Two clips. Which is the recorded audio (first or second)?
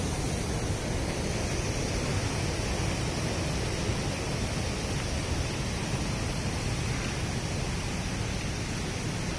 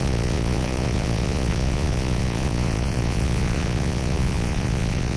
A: first